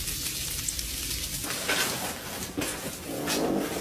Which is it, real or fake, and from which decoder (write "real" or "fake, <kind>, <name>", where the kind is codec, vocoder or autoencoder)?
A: real